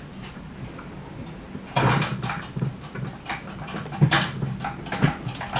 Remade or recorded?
recorded